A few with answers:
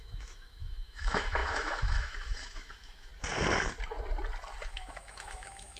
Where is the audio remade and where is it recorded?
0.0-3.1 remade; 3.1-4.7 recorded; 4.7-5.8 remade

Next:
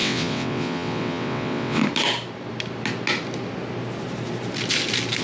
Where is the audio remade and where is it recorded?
0.0-1.8 remade; 1.8-5.2 recorded

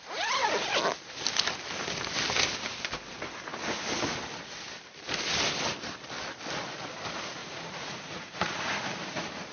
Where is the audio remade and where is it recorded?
0.0-7.4 recorded; 7.4-8.8 remade; 8.8-9.5 recorded

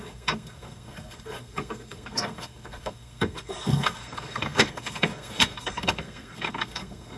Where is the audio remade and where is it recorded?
0.0-7.2 remade

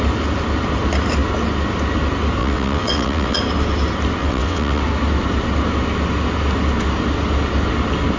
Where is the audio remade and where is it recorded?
0.0-2.4 recorded; 2.4-3.4 remade; 3.4-4.2 recorded; 4.2-4.8 remade; 4.8-8.2 recorded